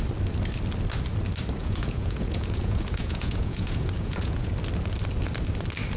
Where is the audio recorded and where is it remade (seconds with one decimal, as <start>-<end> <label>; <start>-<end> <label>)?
0.0-1.6 recorded; 1.6-4.5 remade; 4.5-6.0 recorded